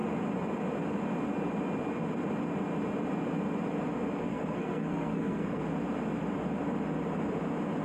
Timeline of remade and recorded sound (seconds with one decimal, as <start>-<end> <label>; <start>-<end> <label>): 0.0-4.3 recorded; 4.3-5.6 remade; 5.6-7.8 recorded